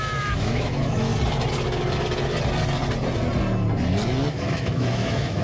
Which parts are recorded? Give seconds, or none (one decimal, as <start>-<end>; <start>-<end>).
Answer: 1.1-4.3